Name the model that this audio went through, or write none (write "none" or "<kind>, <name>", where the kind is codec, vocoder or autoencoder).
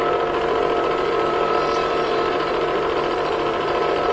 vocoder, BigVGAN v2